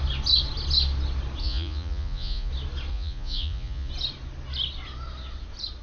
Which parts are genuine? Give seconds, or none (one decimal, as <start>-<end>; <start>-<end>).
0.0-1.4; 2.5-2.9; 3.9-5.8